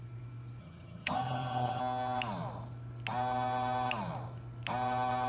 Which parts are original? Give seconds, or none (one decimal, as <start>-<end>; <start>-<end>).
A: 0.0-0.6; 1.8-5.3